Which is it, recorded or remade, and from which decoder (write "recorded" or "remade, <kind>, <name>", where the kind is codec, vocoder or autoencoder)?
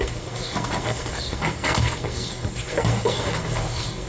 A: remade, codec, SNAC